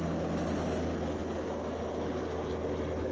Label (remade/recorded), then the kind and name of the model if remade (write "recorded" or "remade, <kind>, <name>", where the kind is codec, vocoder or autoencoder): recorded